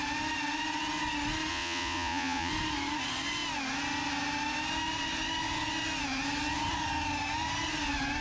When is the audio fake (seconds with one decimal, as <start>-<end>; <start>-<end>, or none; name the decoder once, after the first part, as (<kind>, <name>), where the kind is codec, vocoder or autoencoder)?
1.5-2.5 (vocoder, Vocos)